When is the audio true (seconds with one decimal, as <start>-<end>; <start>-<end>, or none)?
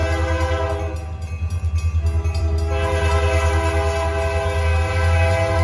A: 0.0-5.6